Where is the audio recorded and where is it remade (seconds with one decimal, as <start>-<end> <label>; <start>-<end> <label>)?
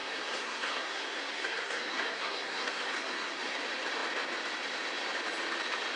0.0-3.6 remade; 3.6-6.0 recorded